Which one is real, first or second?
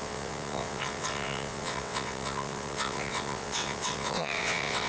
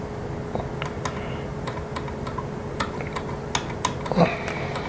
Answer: second